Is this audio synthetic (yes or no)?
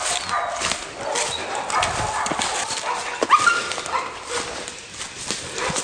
no